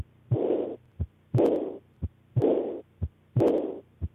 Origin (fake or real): real